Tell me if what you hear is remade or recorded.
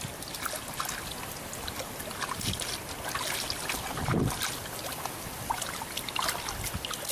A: recorded